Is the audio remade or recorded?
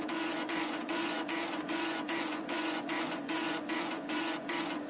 remade